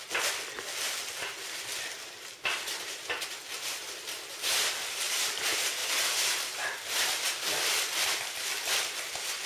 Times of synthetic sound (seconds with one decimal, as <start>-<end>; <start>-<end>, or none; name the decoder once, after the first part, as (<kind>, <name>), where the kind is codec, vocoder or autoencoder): none